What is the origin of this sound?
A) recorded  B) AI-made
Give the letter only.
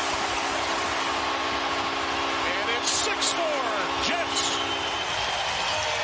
A